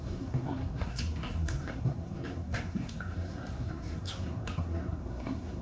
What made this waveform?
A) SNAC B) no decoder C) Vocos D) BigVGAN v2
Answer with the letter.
A